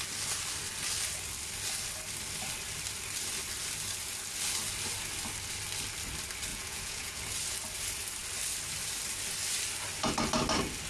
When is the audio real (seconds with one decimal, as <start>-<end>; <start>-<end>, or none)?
0.0-6.5; 7.2-10.9

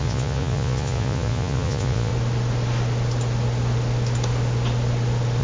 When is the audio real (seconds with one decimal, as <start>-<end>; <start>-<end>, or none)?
2.1-5.4

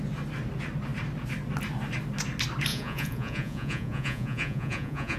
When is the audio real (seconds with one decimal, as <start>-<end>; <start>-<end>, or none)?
0.0-2.7

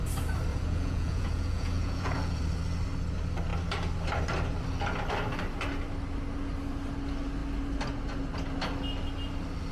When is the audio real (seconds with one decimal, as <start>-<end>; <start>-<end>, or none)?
0.0-0.5; 2.4-9.7

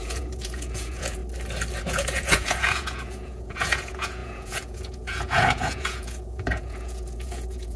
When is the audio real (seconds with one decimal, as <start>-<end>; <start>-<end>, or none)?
1.2-1.8

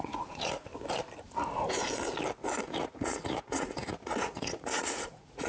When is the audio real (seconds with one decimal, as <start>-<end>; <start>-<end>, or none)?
0.7-2.6

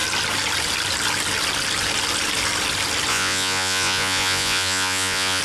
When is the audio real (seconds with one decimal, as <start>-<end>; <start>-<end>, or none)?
0.0-3.1

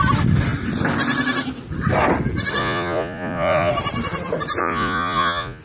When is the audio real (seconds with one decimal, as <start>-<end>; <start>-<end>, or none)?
0.0-2.6; 3.7-4.6